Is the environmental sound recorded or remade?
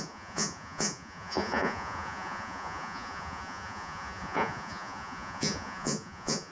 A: remade